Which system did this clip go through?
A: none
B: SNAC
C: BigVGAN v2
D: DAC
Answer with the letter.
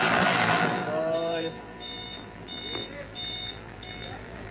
C